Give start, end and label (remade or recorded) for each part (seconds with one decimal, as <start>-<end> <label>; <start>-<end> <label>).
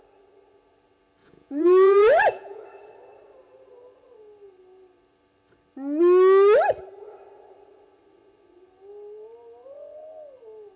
0.0-1.2 recorded; 1.2-2.6 remade; 2.6-10.8 recorded